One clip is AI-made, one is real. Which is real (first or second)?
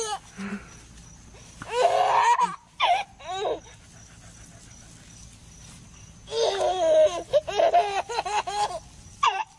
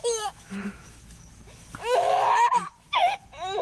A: first